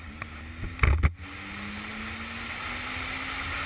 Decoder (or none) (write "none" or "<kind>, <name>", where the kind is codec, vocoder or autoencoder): none